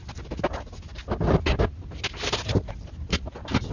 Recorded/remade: recorded